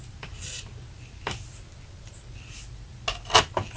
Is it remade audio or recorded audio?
recorded